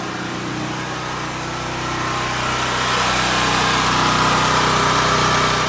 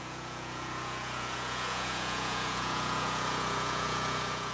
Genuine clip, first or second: first